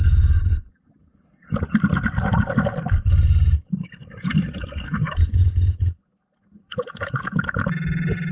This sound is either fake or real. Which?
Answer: real